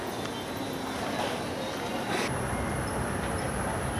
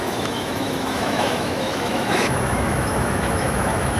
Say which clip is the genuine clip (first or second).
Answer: first